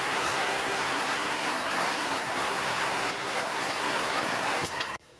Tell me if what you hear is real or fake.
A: fake